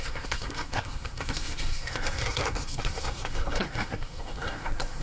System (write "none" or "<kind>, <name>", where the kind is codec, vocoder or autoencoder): codec, SNAC